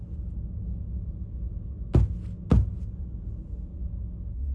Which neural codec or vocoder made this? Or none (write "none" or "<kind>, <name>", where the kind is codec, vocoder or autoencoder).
none